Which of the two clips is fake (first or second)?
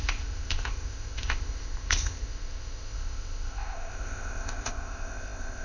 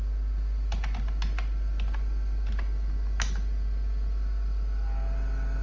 first